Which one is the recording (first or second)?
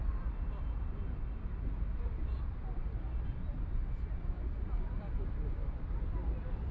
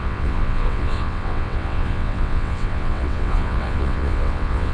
first